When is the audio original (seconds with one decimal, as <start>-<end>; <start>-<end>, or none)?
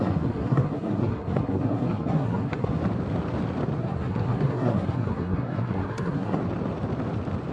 2.8-3.8; 6.4-7.5